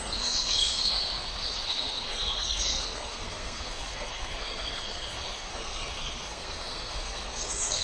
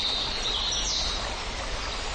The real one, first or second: second